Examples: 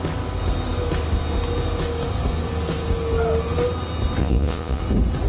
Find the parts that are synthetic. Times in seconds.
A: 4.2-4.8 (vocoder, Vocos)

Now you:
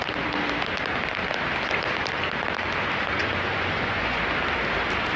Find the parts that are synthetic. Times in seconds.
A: 3.2-4.2 (vocoder, Vocos)

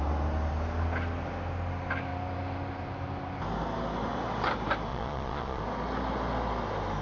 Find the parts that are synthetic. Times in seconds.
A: 4.9-5.6 (vocoder, Vocos)

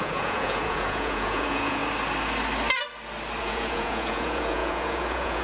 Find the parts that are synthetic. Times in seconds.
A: 0.0-1.8 (vocoder, Vocos); 3.4-5.4

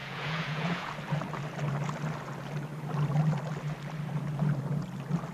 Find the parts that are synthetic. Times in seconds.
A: 0.0-0.9 (vocoder, Vocos)

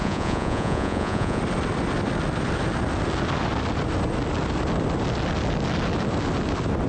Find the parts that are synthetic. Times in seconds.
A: 0.0-1.4 (vocoder, Vocos)

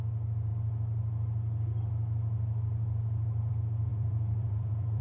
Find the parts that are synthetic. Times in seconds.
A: 3.9-5.0 (vocoder, Vocos)

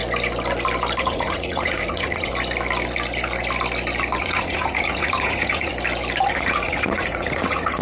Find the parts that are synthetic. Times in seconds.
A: 1.0-2.3 (vocoder, Vocos); 4.2-5.7; 6.3-7.8